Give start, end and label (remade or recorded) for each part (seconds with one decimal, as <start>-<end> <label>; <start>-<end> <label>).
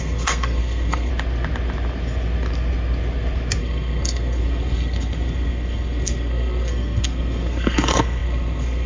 0.0-1.1 remade; 1.1-3.6 recorded; 3.6-8.9 remade